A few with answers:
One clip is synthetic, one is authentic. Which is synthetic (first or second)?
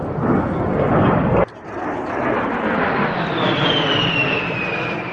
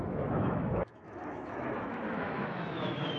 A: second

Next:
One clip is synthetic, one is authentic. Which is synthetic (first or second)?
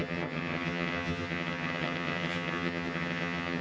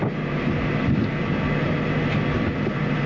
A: first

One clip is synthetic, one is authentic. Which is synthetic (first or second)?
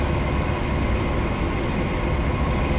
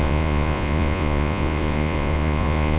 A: second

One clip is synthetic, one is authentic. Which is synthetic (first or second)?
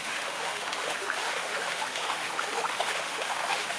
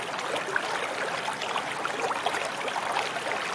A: first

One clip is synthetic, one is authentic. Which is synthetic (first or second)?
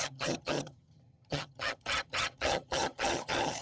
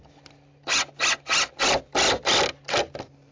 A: first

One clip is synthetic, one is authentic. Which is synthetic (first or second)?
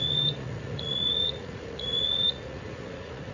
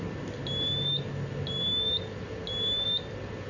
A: first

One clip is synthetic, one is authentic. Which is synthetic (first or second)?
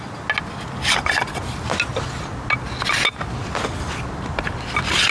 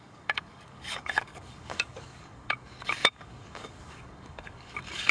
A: second